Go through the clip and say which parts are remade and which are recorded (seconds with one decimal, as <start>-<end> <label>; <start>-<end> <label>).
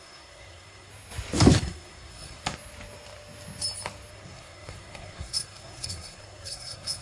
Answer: 0.0-0.9 remade; 0.9-1.6 recorded; 1.6-2.4 remade; 2.4-4.1 recorded; 4.1-7.0 remade